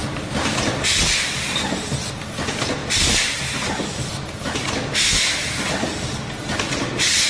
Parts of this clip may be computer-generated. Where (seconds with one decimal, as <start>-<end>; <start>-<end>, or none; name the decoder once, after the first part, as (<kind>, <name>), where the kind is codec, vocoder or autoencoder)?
none